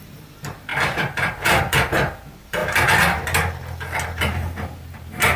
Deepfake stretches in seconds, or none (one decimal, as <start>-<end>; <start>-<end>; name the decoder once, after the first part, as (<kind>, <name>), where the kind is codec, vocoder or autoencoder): 0.0-2.6 (vocoder, BigVGAN v2); 4.2-5.4